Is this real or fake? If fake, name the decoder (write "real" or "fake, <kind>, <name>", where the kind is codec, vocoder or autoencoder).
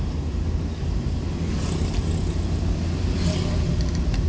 real